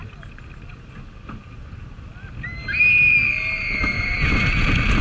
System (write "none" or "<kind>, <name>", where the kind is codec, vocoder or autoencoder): none